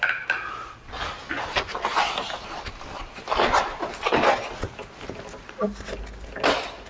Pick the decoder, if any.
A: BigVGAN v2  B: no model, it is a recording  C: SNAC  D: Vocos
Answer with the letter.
B